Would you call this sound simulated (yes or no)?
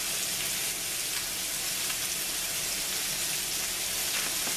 no